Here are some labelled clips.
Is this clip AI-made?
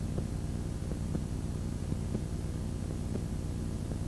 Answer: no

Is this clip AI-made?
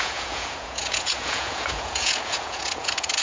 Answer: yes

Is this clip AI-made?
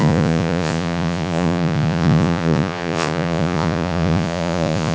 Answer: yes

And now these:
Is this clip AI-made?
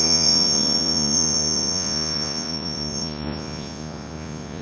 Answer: yes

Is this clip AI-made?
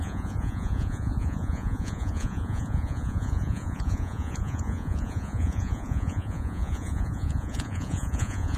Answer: yes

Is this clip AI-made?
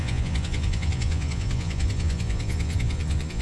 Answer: yes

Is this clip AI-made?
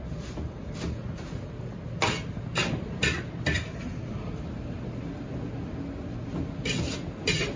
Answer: no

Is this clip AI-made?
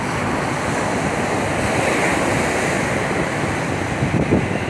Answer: no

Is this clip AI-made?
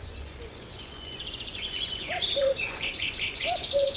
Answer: yes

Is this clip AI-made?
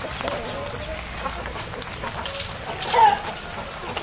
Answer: no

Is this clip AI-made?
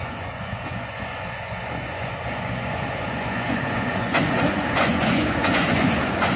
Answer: yes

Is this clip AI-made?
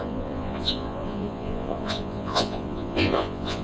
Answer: yes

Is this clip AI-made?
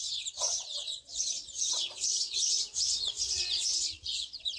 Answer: yes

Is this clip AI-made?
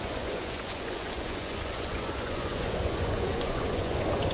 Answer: yes